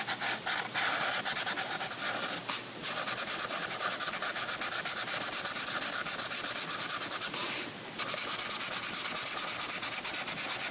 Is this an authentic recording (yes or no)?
yes